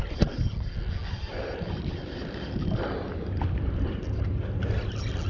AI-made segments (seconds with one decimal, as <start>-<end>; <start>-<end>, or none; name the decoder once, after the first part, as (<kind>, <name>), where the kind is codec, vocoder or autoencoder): 1.3-4.5 (vocoder, BigVGAN v2)